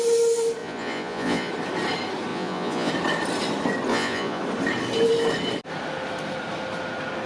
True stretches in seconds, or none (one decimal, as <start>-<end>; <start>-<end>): 0.0-0.6; 1.5-2.3; 2.9-3.9; 4.4-7.3